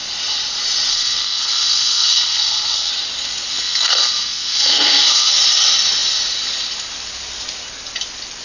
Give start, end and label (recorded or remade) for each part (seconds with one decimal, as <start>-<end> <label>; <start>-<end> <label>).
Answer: 0.0-0.9 recorded; 0.9-2.9 remade; 2.9-3.5 recorded; 3.5-5.3 remade; 5.3-8.4 recorded

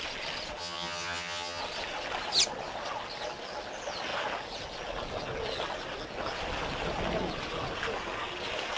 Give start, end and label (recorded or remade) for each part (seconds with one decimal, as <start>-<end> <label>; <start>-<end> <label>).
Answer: 0.0-0.6 recorded; 0.6-1.6 remade; 1.6-8.8 recorded